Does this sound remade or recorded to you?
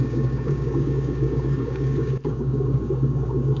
remade